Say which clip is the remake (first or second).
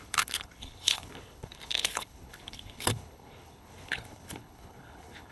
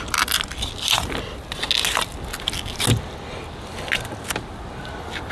first